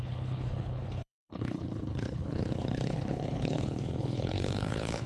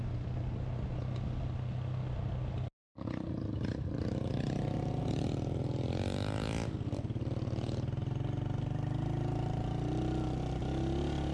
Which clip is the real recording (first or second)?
second